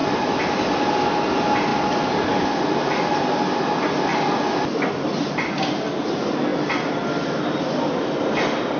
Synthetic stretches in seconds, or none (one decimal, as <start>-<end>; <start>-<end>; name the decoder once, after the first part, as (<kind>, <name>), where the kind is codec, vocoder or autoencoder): none